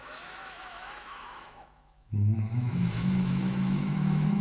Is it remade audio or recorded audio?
remade